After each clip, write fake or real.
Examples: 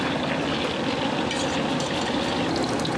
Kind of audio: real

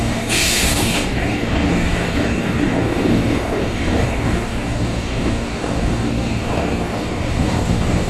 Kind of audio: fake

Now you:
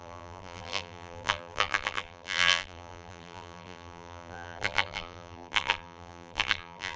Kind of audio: fake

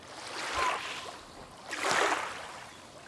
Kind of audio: real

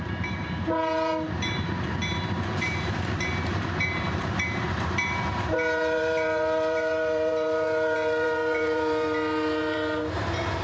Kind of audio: fake